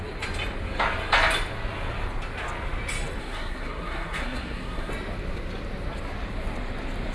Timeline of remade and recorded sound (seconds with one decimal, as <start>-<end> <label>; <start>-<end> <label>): 0.0-3.2 recorded; 3.2-4.9 remade; 4.9-7.1 recorded